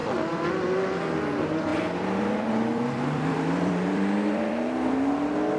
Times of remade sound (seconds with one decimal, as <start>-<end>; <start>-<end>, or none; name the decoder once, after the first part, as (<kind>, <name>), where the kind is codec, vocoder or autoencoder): 1.7-5.1 (vocoder, BigVGAN v2)